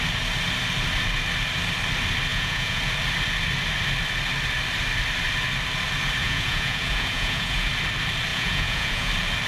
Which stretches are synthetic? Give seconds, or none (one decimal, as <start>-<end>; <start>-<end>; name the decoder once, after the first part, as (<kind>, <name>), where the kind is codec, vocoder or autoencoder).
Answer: 2.3-2.8 (vocoder, Vocos); 6.2-7.7; 8.3-9.1